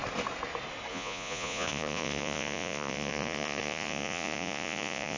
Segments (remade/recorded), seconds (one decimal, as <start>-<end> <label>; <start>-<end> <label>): 0.0-0.9 recorded; 0.9-5.2 remade